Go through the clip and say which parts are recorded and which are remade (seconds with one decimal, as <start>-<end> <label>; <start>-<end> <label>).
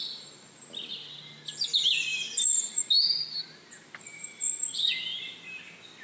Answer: 0.0-4.1 recorded; 4.1-4.9 remade; 4.9-6.0 recorded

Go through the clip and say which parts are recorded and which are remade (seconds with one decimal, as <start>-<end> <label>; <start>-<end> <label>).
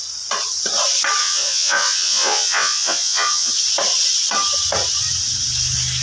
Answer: 0.0-1.2 recorded; 1.2-3.5 remade; 3.5-6.0 recorded